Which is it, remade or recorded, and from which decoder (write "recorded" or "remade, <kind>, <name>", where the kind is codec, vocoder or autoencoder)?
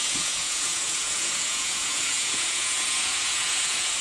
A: remade, vocoder, Vocos